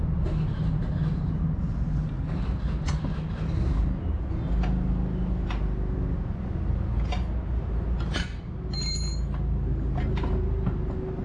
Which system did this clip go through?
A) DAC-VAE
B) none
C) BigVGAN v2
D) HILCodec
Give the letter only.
B